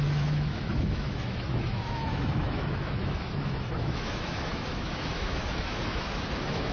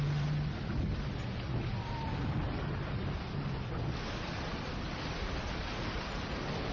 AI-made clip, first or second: first